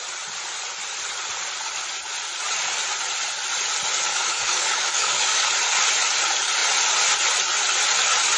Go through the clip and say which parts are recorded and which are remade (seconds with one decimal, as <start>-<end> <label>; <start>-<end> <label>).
0.0-4.1 recorded; 4.1-5.5 remade; 5.5-8.4 recorded